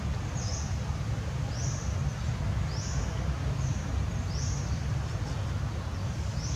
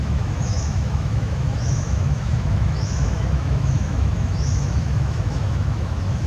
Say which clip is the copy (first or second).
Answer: second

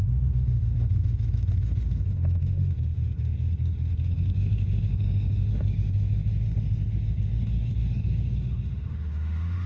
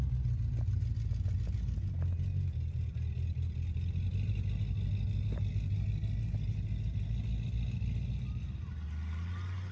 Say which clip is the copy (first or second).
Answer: first